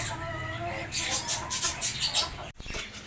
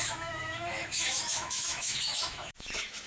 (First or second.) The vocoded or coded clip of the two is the second